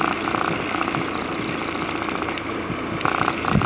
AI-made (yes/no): no